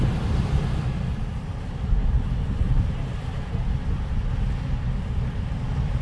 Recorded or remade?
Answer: recorded